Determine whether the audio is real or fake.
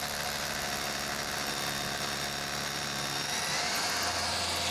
real